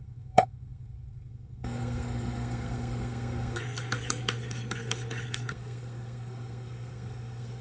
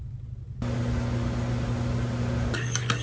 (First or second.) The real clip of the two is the second